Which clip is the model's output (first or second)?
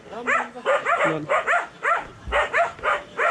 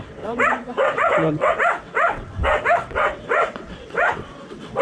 second